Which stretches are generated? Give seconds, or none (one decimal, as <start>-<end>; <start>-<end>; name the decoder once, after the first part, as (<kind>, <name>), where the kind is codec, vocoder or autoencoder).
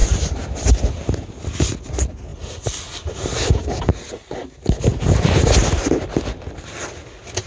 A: 0.0-1.3 (vocoder, BigVGAN v2); 4.9-5.4